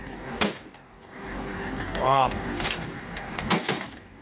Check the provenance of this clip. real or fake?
fake